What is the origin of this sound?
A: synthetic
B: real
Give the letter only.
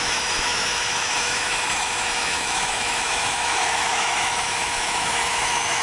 A